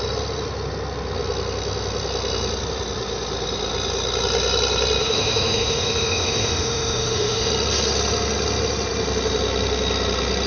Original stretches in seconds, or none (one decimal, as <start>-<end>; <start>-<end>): 0.0-5.0; 7.5-10.5